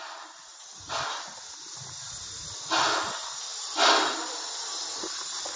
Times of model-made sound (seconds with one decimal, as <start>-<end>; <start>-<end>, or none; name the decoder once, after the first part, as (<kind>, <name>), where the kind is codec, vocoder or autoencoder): 0.5-1.2 (vocoder, BigVGAN v2); 3.5-4.1